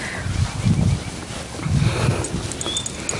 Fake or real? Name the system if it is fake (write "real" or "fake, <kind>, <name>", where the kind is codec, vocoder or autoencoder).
real